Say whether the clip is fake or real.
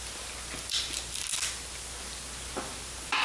real